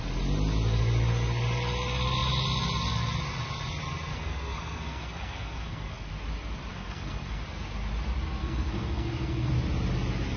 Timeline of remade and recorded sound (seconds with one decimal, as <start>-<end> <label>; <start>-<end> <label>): 0.0-4.1 recorded; 4.1-6.1 remade; 6.1-6.7 recorded; 6.7-7.4 remade; 7.4-8.4 recorded; 8.4-9.5 remade; 9.5-10.4 recorded